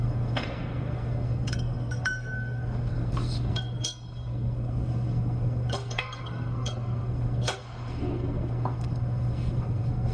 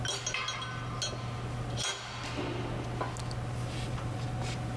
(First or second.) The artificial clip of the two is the first